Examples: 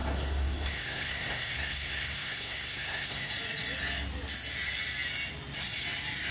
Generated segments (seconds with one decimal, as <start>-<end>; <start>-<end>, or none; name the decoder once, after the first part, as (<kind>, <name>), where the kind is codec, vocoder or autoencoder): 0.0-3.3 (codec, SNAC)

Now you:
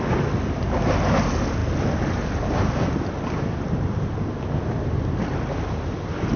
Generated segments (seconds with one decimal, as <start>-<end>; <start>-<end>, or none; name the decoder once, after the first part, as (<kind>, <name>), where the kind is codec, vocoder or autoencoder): none

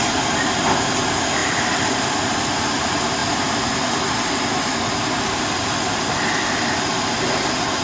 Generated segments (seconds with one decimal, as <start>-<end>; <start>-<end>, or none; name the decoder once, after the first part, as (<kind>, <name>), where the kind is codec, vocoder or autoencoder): 1.4-1.9 (vocoder, BigVGAN v2); 3.2-4.6

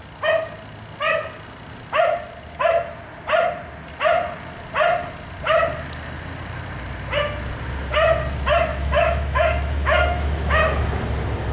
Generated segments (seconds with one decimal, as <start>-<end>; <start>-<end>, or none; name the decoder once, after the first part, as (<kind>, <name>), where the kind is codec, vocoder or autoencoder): 8.7-10.8 (autoencoder, DAC-VAE)

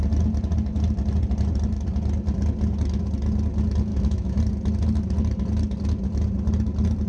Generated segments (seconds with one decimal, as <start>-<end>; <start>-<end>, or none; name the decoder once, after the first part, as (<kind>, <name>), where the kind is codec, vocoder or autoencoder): 3.9-4.4 (autoencoder, DAC-VAE)

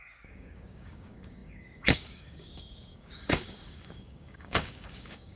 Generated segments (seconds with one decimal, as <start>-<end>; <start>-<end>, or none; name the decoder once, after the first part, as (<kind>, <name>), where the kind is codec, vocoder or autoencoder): 0.0-5.4 (codec, DAC)

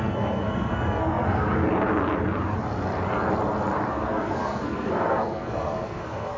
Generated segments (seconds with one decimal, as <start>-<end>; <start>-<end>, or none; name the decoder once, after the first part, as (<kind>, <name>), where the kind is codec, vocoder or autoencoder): 0.0-1.6 (codec, SNAC); 3.9-6.4